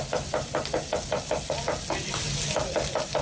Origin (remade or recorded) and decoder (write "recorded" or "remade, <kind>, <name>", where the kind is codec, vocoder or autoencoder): recorded